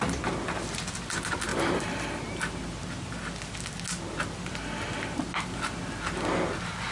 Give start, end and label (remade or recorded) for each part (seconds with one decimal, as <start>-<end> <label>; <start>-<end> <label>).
0.0-1.5 recorded; 1.5-2.2 remade; 2.2-6.9 recorded